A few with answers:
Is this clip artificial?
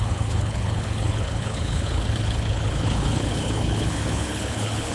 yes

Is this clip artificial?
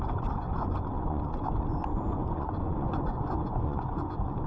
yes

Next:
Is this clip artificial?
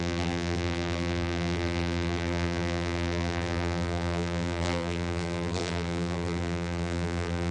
yes